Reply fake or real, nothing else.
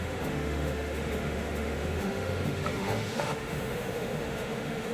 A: fake